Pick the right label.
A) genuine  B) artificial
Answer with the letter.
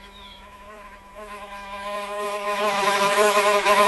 B